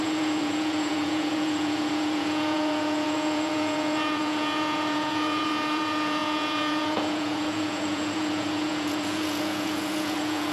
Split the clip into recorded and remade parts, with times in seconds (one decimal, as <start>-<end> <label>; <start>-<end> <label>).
0.0-10.5 remade